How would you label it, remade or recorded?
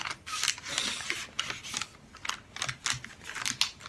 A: recorded